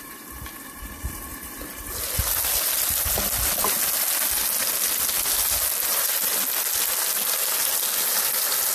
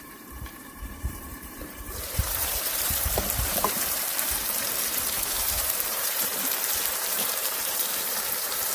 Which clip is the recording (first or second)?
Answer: first